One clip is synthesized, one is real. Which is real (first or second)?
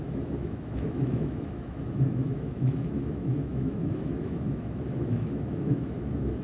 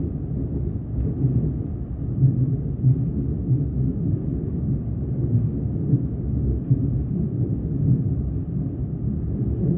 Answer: second